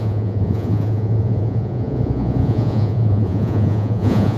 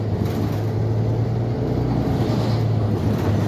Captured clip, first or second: second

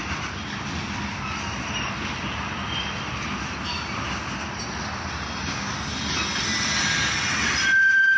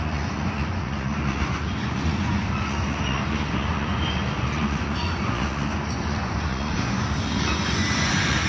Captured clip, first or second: first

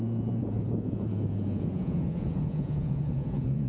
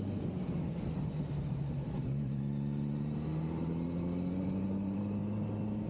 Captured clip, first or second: second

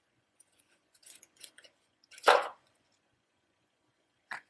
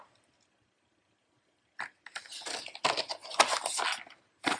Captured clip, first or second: second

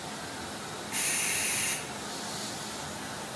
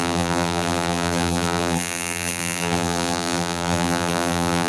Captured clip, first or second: first